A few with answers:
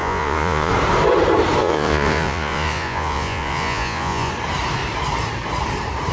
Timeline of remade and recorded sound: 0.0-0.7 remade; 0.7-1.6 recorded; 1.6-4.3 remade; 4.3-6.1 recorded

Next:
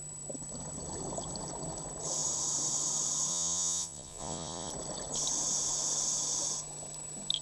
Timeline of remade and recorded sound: 0.0-3.3 recorded; 3.3-4.7 remade; 4.7-7.4 recorded

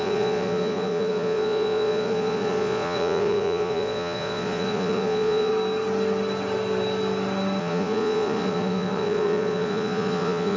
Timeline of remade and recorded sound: 0.0-5.5 remade; 5.5-7.6 recorded; 7.6-10.6 remade